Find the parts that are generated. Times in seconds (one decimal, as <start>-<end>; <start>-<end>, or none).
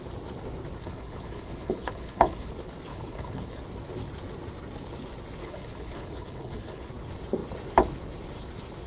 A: 0.8-2.5; 2.9-3.6; 5.4-6.9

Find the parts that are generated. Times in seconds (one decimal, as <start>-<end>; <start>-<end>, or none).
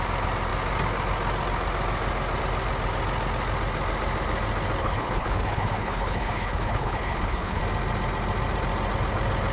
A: 4.8-7.6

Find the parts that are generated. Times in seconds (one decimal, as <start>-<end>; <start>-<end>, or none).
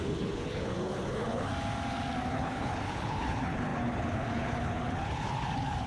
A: 0.0-1.5; 2.3-5.9